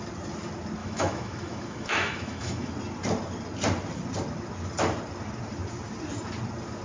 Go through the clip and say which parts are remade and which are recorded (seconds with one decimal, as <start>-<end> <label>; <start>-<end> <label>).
0.0-0.8 recorded; 0.8-2.7 remade; 2.7-6.8 recorded

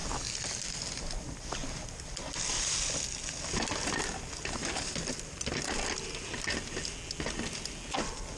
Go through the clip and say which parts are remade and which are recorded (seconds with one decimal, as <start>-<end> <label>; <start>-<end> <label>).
0.0-8.4 recorded

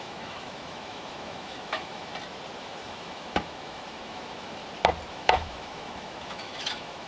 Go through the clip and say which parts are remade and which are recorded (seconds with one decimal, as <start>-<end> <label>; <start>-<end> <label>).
0.0-2.1 remade; 2.1-2.6 recorded; 2.6-4.6 remade; 4.6-5.1 recorded; 5.1-7.1 remade

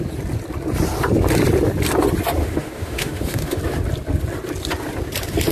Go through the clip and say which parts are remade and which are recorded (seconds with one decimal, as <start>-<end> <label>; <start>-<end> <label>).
0.0-2.4 recorded; 2.4-3.6 remade; 3.6-5.5 recorded